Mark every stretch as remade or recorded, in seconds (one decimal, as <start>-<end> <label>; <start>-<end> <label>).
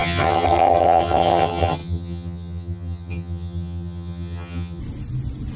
0.0-4.8 remade; 4.8-5.6 recorded